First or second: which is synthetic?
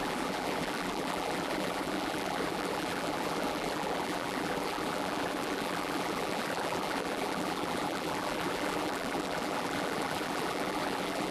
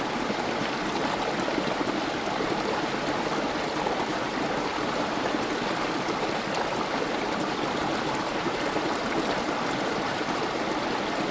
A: first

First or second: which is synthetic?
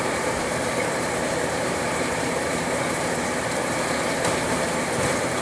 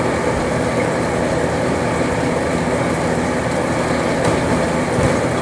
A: first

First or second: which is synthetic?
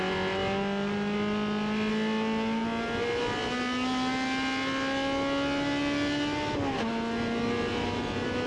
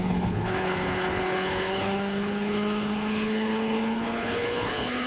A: second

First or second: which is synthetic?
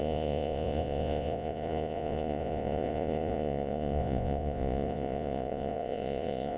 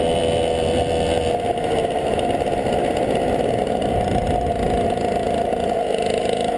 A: first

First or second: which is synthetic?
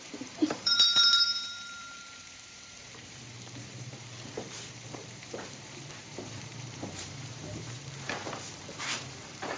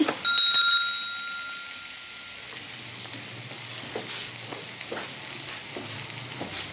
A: first